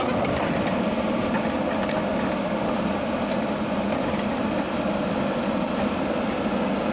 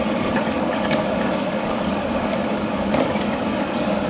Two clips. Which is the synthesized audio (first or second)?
second